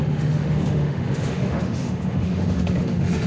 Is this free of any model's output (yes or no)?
no